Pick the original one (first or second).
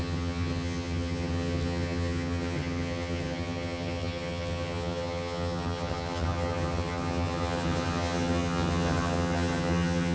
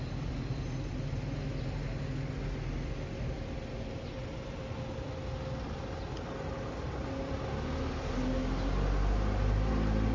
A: second